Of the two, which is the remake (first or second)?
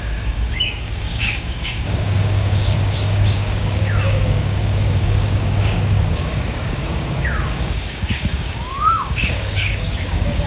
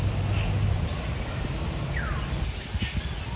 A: first